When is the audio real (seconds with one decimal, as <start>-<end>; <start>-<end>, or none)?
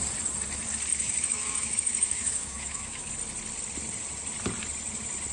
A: 0.0-0.9; 3.1-5.3